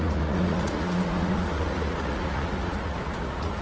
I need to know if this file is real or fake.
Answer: fake